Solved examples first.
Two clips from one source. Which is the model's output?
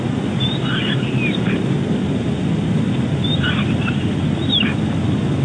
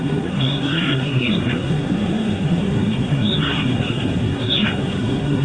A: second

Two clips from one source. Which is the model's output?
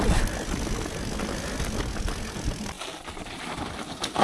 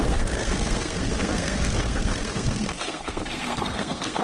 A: second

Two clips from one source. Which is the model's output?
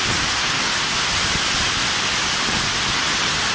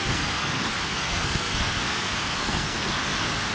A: second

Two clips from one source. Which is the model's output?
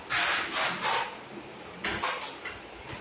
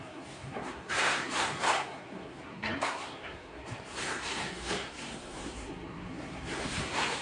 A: second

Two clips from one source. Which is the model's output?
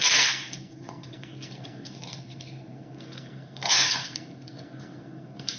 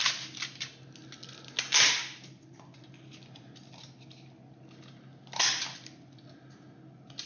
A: first